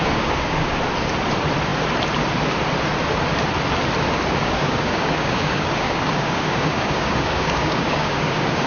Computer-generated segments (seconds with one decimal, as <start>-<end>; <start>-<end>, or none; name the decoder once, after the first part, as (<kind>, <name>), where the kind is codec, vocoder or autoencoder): 0.0-0.8 (codec, DAC); 4.4-8.7

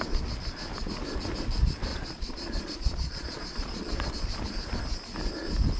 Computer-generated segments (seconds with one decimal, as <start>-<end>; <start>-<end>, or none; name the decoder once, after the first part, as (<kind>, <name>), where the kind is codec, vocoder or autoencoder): 1.9-4.1 (vocoder, Vocos)

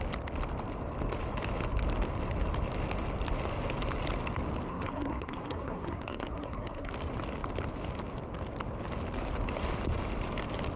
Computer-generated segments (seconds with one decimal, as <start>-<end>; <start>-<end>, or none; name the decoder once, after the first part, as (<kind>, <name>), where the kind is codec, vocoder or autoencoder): 4.7-6.9 (codec, SNAC)

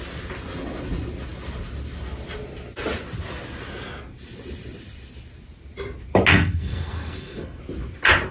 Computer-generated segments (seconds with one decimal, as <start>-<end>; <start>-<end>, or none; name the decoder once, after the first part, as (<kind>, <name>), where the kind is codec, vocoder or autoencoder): 6.3-7.6 (codec, SNAC)

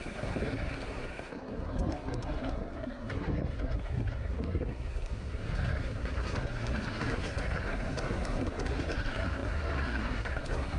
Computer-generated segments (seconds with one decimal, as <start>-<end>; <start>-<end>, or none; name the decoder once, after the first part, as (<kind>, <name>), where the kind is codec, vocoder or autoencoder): 0.0-10.8 (codec, SNAC)

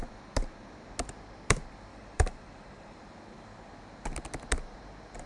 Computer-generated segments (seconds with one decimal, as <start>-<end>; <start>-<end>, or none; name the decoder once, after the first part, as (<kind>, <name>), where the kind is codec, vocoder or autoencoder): 1.9-3.0 (vocoder, BigVGAN v2)